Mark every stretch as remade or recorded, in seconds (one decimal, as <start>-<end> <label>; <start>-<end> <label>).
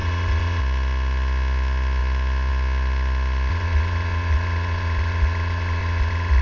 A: 0.0-0.6 remade; 0.6-3.5 recorded; 3.5-6.4 remade